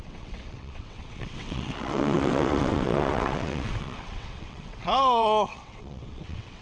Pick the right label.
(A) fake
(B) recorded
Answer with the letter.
A